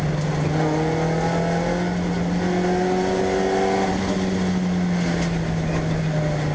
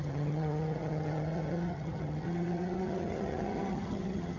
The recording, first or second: first